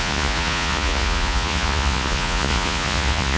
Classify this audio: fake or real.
fake